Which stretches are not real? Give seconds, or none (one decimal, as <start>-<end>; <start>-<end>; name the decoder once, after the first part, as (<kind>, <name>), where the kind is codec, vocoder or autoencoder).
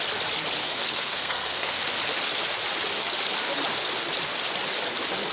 0.6-1.8 (codec, SNAC)